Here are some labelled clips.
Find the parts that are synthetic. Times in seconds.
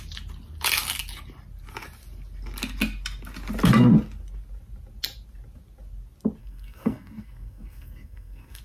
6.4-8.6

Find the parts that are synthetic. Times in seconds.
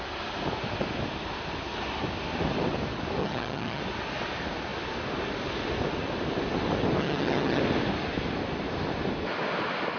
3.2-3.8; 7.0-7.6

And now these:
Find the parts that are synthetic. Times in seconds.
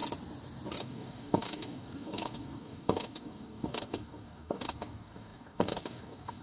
0.8-6.4